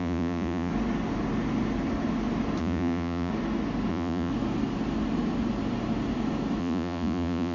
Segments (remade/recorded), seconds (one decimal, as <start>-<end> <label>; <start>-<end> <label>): 0.0-0.7 remade; 0.7-2.6 recorded; 2.6-3.3 remade; 3.3-3.9 recorded; 3.9-4.3 remade; 4.3-6.6 recorded; 6.6-7.5 remade